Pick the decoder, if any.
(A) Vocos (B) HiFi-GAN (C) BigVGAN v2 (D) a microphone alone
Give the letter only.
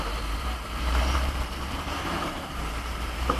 C